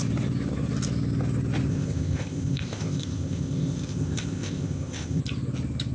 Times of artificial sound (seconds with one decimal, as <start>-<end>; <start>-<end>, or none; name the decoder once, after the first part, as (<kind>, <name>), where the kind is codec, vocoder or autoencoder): 1.7-5.2 (codec, ZipCodec)